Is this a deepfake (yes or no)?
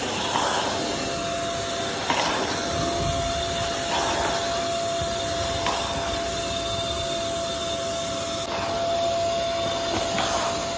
no